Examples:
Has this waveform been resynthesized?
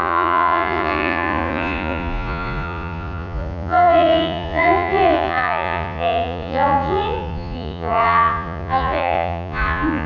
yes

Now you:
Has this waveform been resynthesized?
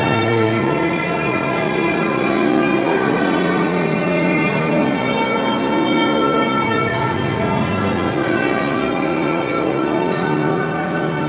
yes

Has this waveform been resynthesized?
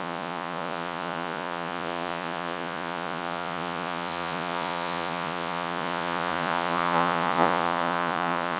yes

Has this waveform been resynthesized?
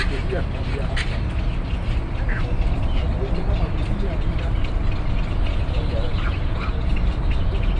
no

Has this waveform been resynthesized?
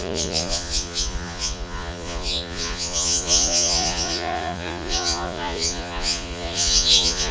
yes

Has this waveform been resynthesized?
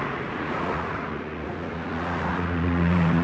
yes